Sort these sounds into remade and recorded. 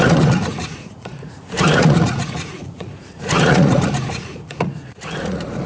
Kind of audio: remade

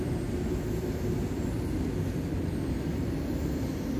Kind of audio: recorded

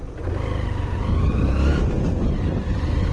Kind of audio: recorded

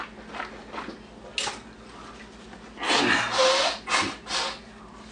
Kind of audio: recorded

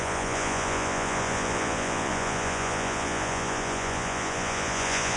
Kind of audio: remade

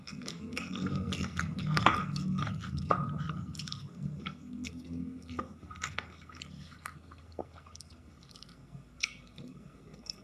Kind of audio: remade